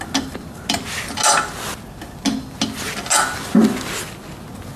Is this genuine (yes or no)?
yes